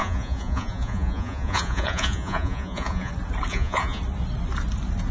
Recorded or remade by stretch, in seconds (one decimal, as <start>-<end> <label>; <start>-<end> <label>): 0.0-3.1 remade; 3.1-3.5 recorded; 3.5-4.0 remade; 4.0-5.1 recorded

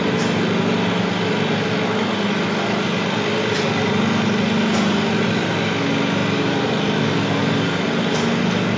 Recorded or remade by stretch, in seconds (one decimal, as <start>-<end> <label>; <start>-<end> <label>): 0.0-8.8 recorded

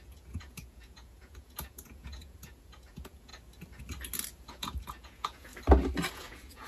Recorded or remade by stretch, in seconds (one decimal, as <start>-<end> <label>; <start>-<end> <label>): 0.0-3.3 remade; 3.3-4.5 recorded; 4.5-5.5 remade; 5.5-6.1 recorded; 6.1-6.7 remade

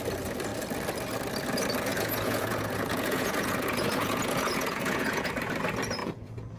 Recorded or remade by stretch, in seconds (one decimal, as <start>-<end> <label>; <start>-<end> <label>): 0.0-1.9 recorded; 1.9-5.3 remade; 5.3-6.0 recorded; 6.0-6.6 remade

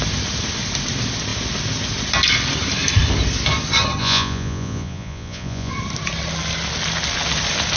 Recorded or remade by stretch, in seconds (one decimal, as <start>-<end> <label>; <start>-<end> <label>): 0.0-4.0 recorded; 4.0-5.7 remade; 5.7-7.8 recorded

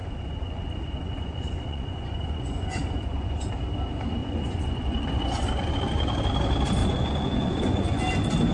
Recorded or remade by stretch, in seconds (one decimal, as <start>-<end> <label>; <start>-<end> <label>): 0.0-3.5 remade; 3.5-4.2 recorded; 4.2-5.8 remade; 5.8-6.8 recorded; 6.8-8.0 remade; 8.0-8.5 recorded

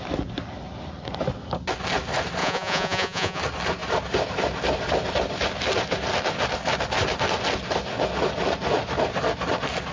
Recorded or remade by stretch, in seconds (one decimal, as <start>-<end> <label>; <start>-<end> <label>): 0.0-2.4 recorded; 2.4-3.4 remade; 3.4-9.9 recorded